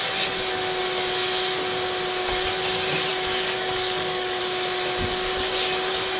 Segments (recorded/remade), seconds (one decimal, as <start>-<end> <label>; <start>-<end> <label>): 0.0-3.1 recorded; 3.1-4.4 remade; 4.4-6.2 recorded